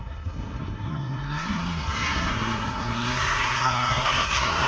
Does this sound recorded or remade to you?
remade